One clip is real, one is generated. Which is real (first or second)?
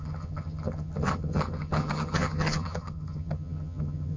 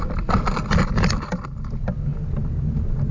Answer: second